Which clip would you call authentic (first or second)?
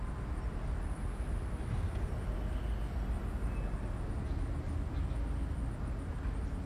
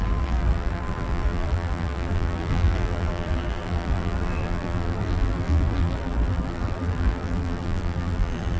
first